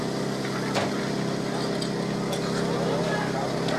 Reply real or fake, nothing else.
real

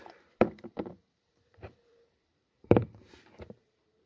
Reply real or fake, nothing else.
fake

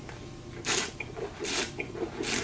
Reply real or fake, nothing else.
fake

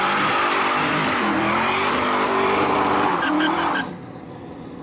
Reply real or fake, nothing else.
fake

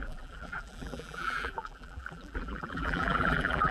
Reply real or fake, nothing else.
fake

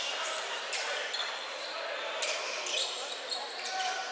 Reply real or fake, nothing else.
fake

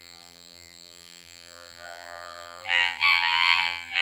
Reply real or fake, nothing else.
fake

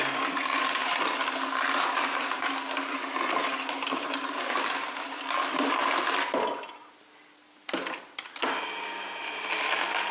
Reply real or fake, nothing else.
real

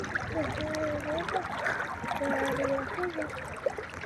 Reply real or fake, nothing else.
real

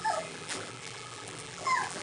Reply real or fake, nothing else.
fake